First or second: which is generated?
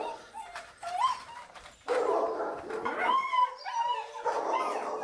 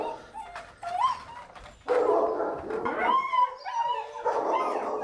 first